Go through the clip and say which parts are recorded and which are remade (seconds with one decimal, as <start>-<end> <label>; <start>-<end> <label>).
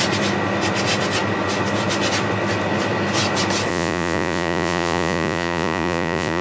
0.0-3.7 recorded; 3.7-6.4 remade